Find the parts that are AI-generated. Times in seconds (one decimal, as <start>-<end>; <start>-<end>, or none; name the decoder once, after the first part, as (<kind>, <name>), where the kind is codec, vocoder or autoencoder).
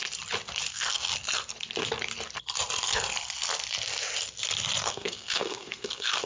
0.7-1.1 (codec, SNAC); 4.9-6.3